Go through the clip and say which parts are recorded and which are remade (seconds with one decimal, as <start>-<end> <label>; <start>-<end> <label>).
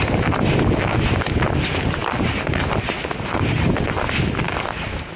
0.0-5.2 recorded